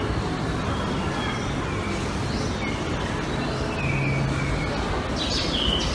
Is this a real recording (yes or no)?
yes